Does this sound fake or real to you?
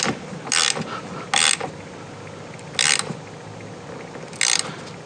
real